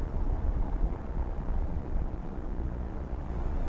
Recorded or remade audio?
remade